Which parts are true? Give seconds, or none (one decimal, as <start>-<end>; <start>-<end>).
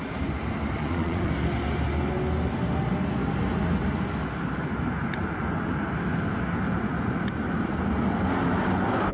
0.0-0.8; 1.3-9.1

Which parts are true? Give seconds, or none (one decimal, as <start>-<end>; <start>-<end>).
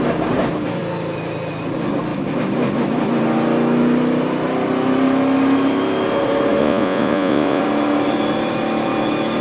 0.0-6.6; 7.6-9.4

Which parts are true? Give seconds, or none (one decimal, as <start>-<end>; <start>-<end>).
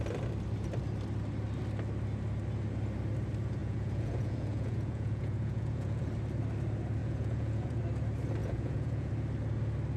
0.0-3.6; 6.1-7.0; 7.8-8.4; 9.1-10.0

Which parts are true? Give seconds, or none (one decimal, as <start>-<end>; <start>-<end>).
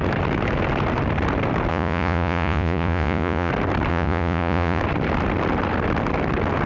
0.0-1.7; 3.5-3.9; 4.8-6.7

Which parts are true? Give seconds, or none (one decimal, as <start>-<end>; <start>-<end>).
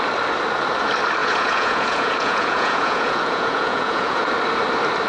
0.0-1.2; 4.3-5.1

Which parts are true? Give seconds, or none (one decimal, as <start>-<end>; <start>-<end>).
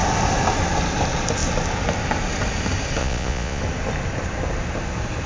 0.0-3.0; 3.6-5.3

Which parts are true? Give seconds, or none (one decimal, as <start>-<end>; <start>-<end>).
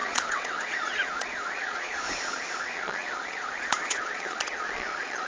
none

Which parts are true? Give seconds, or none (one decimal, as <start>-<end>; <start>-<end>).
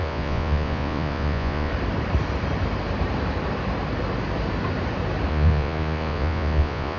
1.7-5.3